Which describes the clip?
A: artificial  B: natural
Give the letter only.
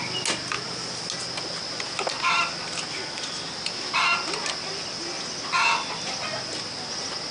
B